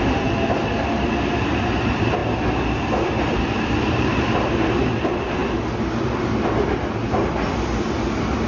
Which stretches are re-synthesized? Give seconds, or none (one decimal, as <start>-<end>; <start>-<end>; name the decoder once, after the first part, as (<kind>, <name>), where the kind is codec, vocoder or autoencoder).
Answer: 0.0-2.2 (vocoder, BigVGAN v2); 3.3-5.4